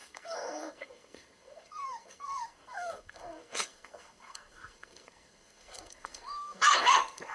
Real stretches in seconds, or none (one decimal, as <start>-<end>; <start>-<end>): none